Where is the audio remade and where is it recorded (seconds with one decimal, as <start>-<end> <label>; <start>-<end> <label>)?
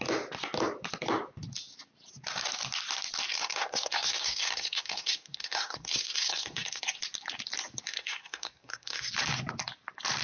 0.0-3.3 recorded; 3.3-6.8 remade; 6.8-7.9 recorded; 7.9-9.1 remade; 9.1-10.2 recorded